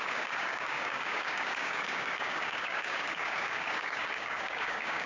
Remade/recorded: remade